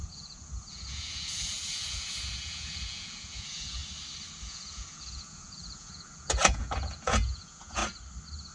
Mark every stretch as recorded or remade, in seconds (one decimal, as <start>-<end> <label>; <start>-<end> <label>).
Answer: 0.0-3.8 remade; 3.8-4.4 recorded; 4.4-7.8 remade; 7.8-8.5 recorded